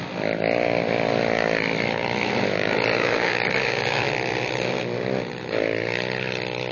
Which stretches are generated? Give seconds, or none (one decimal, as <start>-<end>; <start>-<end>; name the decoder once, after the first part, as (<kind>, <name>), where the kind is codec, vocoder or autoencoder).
2.9-4.0 (codec, DAC)